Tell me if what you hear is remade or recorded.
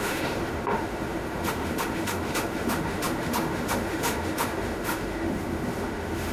remade